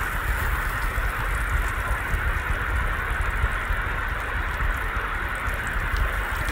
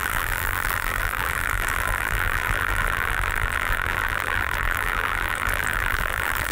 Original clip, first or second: first